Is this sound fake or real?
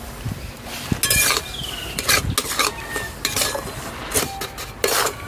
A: real